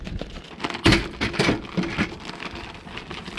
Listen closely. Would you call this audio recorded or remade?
recorded